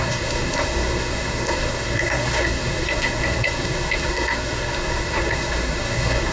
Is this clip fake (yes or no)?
yes